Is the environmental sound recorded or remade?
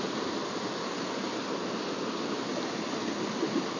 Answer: recorded